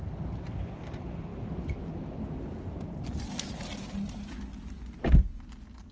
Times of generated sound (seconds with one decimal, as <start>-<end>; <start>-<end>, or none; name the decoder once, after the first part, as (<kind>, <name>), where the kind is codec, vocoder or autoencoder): none